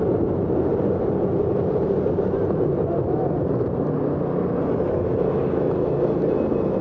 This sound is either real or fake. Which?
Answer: real